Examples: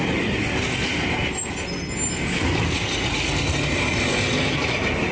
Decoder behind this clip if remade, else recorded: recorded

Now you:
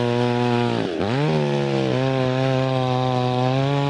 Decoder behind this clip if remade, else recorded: recorded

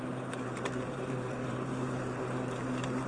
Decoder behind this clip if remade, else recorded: remade, vocoder, BigVGAN v2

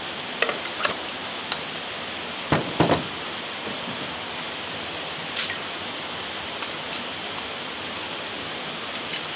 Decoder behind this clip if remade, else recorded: remade, vocoder, BigVGAN v2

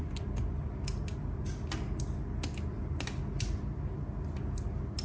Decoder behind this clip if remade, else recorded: recorded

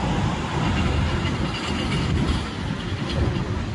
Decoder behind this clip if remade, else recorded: recorded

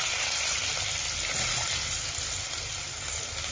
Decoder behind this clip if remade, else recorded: recorded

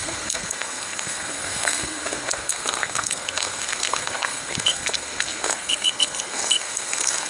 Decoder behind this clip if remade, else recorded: remade, codec, SNAC